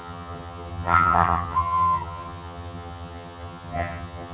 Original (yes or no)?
no